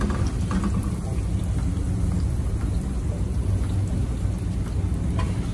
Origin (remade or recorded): recorded